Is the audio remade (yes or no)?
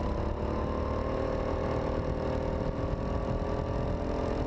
no